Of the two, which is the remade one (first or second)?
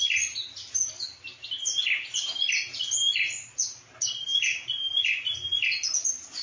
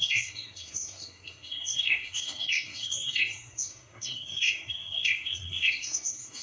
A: second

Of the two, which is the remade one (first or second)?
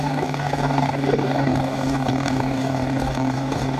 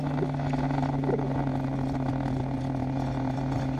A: first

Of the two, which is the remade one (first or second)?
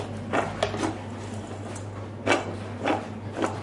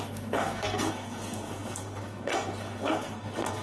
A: second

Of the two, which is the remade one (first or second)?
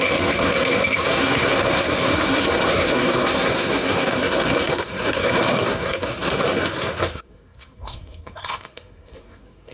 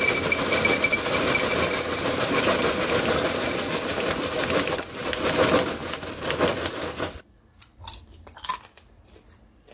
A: first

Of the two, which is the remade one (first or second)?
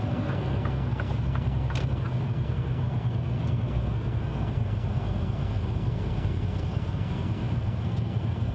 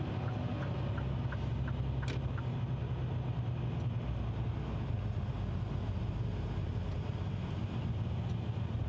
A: first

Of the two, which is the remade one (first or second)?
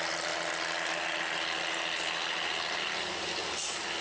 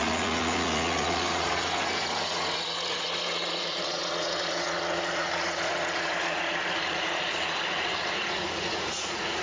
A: second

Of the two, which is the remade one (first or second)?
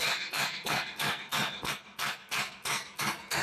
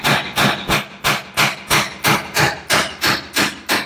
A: first